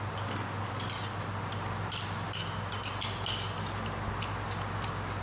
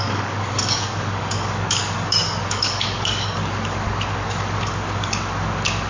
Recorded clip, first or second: first